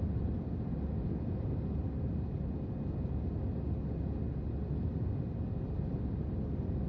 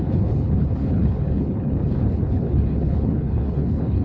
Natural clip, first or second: first